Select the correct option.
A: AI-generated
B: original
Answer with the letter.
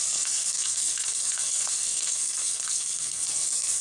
A